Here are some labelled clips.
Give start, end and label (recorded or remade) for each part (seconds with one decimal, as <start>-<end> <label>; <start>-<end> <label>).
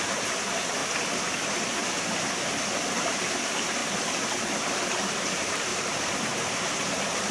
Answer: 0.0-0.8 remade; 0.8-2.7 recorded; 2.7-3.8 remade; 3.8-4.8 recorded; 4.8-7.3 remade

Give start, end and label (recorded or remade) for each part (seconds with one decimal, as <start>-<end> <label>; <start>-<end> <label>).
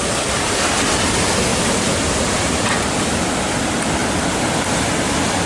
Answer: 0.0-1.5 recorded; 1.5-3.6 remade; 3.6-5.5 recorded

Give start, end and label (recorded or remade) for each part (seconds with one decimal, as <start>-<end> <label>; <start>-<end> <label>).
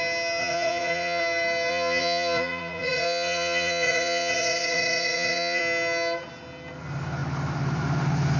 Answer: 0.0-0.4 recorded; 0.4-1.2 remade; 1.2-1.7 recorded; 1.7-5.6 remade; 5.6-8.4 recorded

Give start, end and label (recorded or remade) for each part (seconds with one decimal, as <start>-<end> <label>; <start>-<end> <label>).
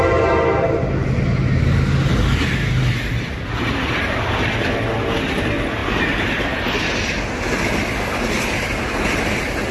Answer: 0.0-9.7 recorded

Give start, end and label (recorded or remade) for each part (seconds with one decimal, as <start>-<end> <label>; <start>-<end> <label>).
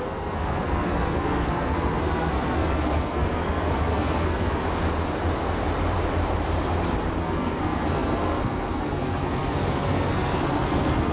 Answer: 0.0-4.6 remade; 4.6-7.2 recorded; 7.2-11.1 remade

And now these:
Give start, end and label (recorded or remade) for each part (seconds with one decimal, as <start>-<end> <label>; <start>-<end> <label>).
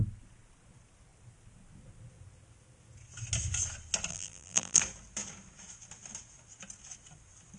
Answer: 0.0-4.1 recorded; 4.1-4.8 remade; 4.8-7.6 recorded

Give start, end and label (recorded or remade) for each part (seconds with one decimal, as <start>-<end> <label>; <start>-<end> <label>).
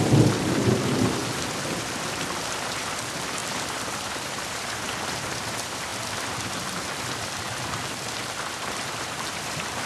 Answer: 0.0-1.2 remade; 1.2-3.0 recorded; 3.0-5.9 remade; 5.9-7.6 recorded; 7.6-9.9 remade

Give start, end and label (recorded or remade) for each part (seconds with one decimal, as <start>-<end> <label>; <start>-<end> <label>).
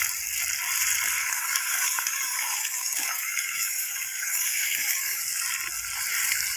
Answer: 0.0-1.2 recorded; 1.2-5.2 remade; 5.2-6.6 recorded